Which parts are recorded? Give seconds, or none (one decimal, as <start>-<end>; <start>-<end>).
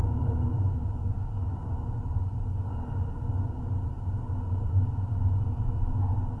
2.0-6.4